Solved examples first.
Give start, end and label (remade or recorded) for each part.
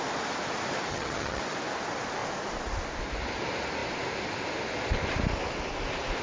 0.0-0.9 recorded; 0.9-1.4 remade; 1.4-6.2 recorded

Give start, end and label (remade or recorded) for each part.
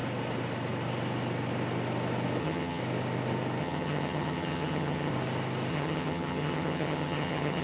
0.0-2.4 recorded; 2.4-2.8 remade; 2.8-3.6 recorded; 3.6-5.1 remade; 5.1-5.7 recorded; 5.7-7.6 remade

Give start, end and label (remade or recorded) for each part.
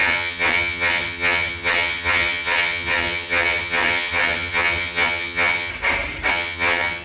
0.0-5.7 remade; 5.7-6.3 recorded; 6.3-7.0 remade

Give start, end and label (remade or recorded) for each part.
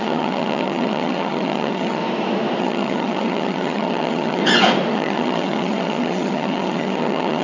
0.0-2.0 remade; 2.0-2.6 recorded; 2.6-4.4 remade; 4.4-4.9 recorded; 4.9-7.4 remade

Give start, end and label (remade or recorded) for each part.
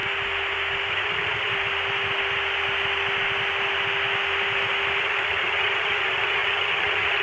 0.0-0.9 recorded; 0.9-1.5 remade; 1.5-5.0 recorded; 5.0-7.2 remade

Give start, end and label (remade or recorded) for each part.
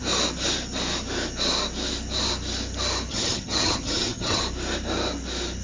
0.0-3.1 recorded; 3.1-4.4 remade; 4.4-5.6 recorded